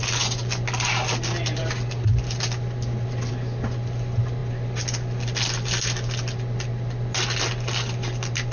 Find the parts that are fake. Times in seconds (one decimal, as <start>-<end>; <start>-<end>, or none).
none